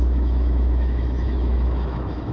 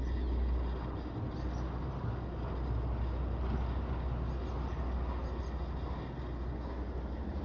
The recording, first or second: second